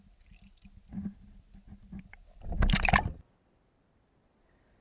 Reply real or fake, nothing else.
real